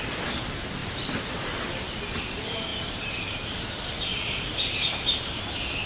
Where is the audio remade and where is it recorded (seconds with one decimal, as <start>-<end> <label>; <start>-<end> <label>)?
0.0-0.8 recorded; 0.8-2.0 remade; 2.0-2.7 recorded; 2.7-3.2 remade; 3.2-4.1 recorded; 4.1-5.4 remade; 5.4-5.9 recorded